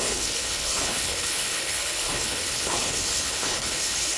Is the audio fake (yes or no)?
yes